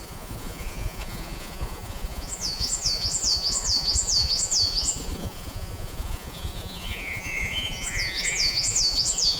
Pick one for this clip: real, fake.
fake